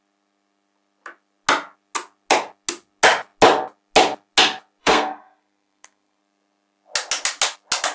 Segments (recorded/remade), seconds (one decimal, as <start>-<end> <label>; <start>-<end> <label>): 0.0-4.8 recorded; 4.8-6.2 remade; 6.2-7.9 recorded